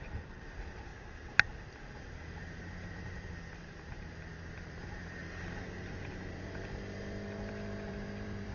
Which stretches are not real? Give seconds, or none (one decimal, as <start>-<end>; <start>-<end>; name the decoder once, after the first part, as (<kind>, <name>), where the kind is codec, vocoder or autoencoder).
0.0-0.9 (vocoder, BigVGAN v2); 1.6-5.2; 6.3-8.5

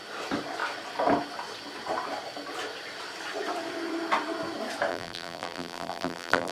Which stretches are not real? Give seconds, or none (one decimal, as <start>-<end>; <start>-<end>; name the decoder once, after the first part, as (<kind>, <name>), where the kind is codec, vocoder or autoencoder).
4.9-6.5 (vocoder, BigVGAN v2)

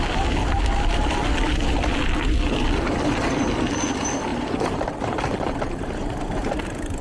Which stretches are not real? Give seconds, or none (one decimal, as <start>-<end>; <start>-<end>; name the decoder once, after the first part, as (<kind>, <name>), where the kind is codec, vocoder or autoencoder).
4.3-6.6 (vocoder, BigVGAN v2)